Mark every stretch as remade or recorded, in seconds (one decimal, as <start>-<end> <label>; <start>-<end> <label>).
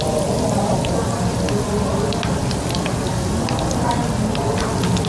0.0-5.1 recorded